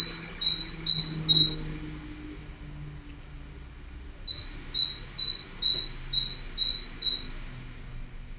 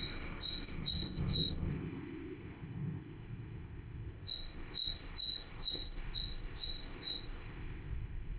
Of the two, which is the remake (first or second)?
second